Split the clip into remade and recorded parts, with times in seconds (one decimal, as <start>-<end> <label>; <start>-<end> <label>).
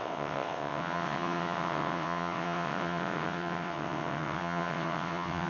0.0-5.5 remade